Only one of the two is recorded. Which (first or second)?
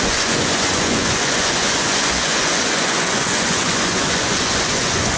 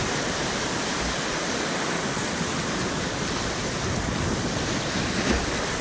second